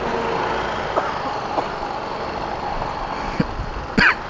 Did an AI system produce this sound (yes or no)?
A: no